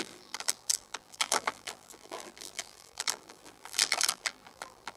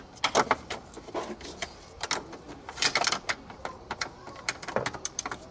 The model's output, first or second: first